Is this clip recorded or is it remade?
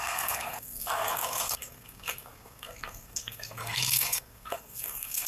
remade